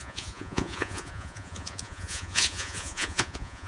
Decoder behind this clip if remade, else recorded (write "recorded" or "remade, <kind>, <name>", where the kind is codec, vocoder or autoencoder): remade, vocoder, Vocos